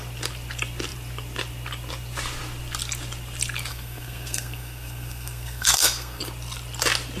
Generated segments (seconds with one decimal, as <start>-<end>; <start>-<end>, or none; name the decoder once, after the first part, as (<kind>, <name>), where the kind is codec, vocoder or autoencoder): 3.7-6.2 (codec, SNAC)